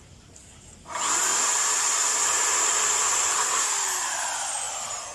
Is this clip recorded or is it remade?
recorded